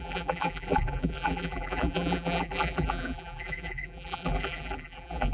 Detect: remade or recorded remade